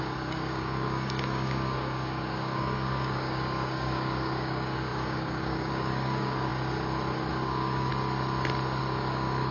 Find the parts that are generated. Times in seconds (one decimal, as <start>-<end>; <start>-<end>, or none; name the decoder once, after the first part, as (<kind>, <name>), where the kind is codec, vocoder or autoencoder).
0.0-6.5 (codec, DAC); 7.3-7.9; 8.8-9.5